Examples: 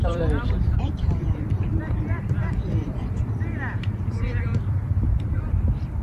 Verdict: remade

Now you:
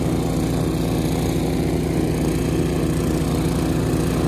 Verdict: recorded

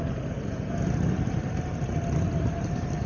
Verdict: recorded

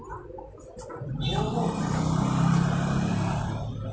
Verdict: recorded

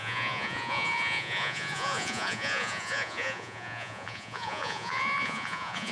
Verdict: remade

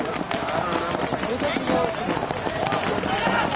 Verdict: recorded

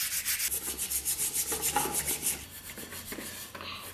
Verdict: recorded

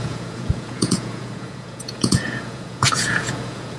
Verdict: remade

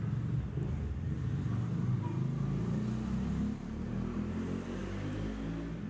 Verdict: recorded